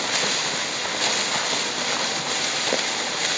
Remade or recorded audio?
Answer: recorded